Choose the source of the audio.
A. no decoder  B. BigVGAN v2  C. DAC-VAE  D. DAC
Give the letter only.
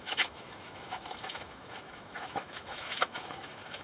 C